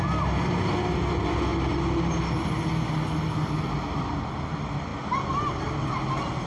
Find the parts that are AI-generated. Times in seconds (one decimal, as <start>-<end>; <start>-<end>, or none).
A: none

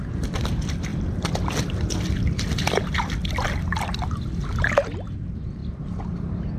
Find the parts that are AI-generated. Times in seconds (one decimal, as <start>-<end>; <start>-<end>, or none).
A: none

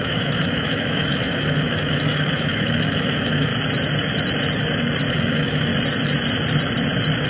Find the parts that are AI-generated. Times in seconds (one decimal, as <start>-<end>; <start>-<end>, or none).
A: 0.0-3.5; 5.1-5.7